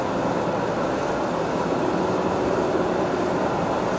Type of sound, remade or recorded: recorded